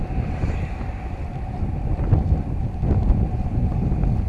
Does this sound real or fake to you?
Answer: real